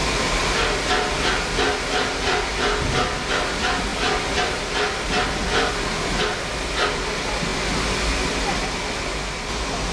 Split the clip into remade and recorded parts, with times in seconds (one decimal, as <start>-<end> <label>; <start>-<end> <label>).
0.0-9.9 recorded